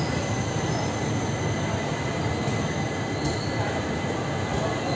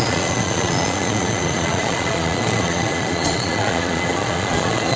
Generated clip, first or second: second